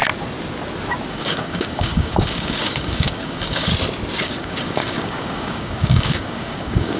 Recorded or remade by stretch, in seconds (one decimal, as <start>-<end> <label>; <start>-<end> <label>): 0.0-1.1 recorded; 1.1-3.7 remade; 3.7-4.2 recorded; 4.2-7.0 remade